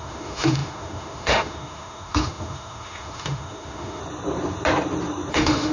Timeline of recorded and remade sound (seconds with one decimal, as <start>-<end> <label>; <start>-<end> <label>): 0.0-4.0 remade; 4.0-5.3 recorded; 5.3-5.7 remade